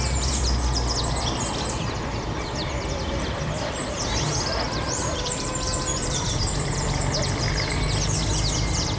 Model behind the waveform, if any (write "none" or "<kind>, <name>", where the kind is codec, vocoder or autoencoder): vocoder, BigVGAN v2